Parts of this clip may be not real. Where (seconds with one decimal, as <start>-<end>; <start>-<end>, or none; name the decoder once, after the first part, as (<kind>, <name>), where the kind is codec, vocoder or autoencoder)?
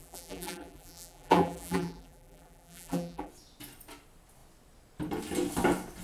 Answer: 0.0-3.3 (vocoder, BigVGAN v2)